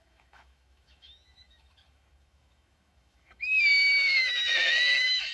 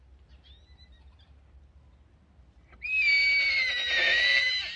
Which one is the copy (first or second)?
first